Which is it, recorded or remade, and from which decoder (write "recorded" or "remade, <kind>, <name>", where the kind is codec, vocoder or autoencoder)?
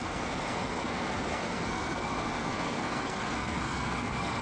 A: remade, codec, SNAC